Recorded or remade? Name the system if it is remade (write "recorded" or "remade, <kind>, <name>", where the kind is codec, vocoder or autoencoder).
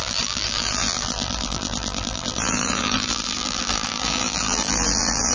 remade, vocoder, BigVGAN v2